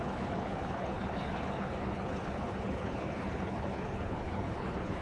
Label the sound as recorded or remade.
remade